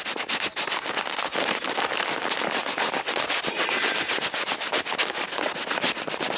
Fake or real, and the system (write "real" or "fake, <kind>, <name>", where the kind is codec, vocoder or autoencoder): real